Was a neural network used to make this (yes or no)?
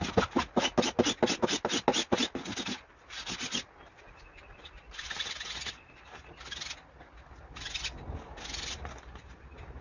no